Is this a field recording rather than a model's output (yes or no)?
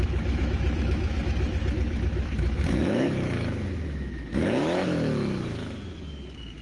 no